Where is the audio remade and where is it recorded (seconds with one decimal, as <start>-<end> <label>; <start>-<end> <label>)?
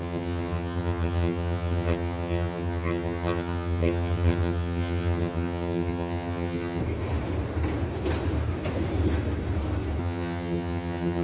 0.0-6.8 remade; 6.8-10.0 recorded; 10.0-11.2 remade